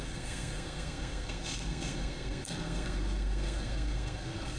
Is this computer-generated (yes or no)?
yes